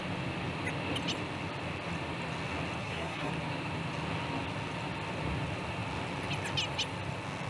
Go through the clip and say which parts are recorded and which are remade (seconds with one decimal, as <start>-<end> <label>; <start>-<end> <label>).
0.0-2.8 recorded; 2.8-3.3 remade; 3.3-7.5 recorded